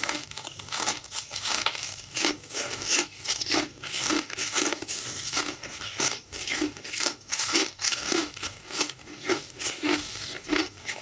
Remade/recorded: remade